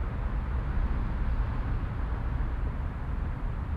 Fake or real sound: real